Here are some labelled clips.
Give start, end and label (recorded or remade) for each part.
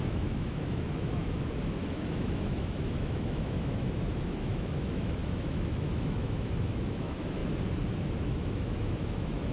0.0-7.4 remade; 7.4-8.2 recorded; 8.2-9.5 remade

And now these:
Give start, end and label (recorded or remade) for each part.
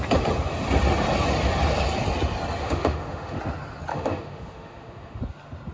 0.0-2.6 recorded; 2.6-3.4 remade; 3.4-3.9 recorded; 3.9-5.2 remade; 5.2-5.7 recorded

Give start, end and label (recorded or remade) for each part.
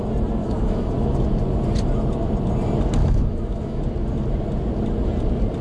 0.0-0.4 recorded; 0.4-0.9 remade; 0.9-3.0 recorded; 3.0-3.8 remade; 3.8-5.6 recorded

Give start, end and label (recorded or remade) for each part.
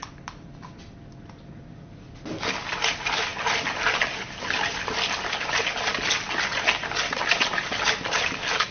0.0-8.7 recorded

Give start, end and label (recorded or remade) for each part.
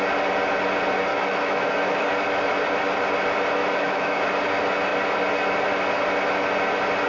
0.0-1.1 recorded; 1.1-2.1 remade; 2.1-3.6 recorded; 3.6-4.2 remade; 4.2-7.1 recorded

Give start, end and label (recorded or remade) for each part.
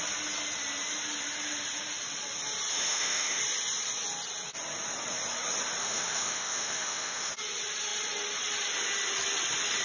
0.0-2.7 recorded; 2.7-3.4 remade; 3.4-5.8 recorded; 5.8-7.3 remade; 7.3-9.8 recorded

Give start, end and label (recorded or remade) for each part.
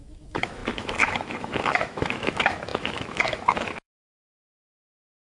0.0-5.3 remade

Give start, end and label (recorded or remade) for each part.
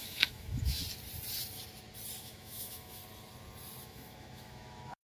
0.0-0.8 remade; 0.8-2.2 recorded; 2.2-3.0 remade; 3.0-3.8 recorded; 3.8-5.1 remade